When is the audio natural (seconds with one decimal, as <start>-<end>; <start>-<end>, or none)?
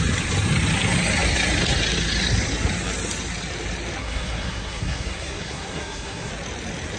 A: 0.0-4.0; 6.3-7.0